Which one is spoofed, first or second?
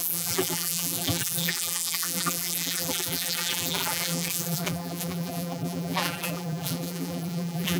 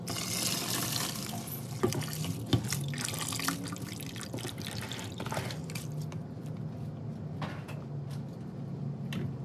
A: first